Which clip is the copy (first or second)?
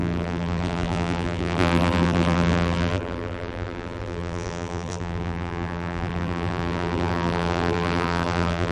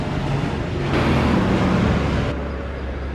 first